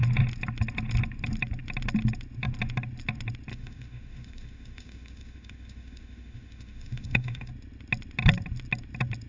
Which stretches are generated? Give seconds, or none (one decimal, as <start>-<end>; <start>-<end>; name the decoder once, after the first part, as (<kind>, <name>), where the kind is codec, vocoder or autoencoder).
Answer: 3.5-7.5 (autoencoder, DAC-VAE)